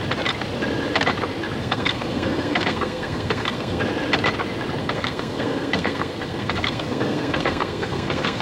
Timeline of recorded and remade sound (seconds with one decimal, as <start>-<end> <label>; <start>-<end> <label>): 0.0-1.6 recorded; 1.6-3.8 remade; 3.8-4.8 recorded; 4.8-8.4 remade